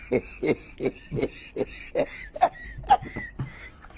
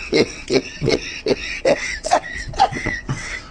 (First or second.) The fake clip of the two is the second